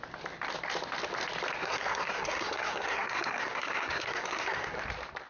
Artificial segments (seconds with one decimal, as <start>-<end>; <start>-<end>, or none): 1.6-4.8